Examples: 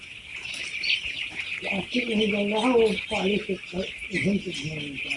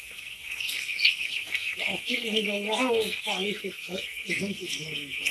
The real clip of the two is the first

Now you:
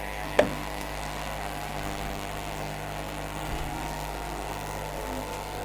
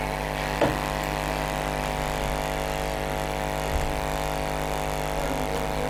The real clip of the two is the second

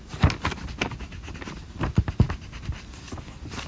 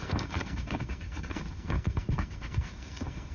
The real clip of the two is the first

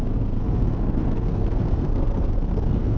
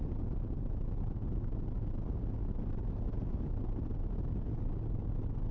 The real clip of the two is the second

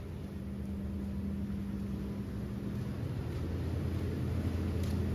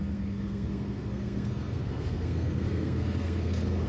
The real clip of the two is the first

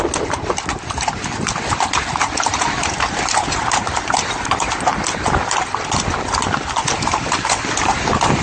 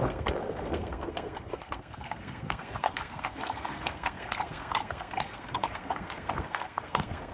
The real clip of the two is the first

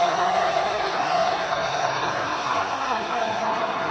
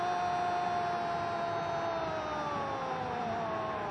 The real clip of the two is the second